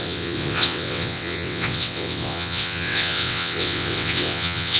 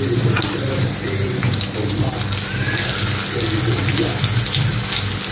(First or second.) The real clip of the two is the second